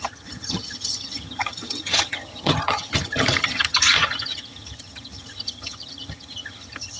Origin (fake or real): fake